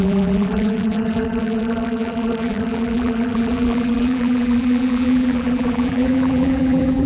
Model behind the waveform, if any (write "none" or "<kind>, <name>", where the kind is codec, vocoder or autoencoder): vocoder, BigVGAN v2